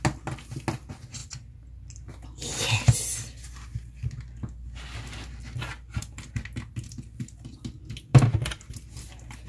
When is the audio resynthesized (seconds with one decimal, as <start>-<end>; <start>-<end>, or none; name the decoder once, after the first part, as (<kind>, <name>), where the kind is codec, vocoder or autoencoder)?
none